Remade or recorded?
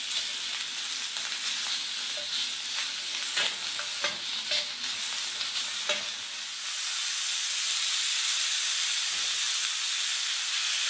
recorded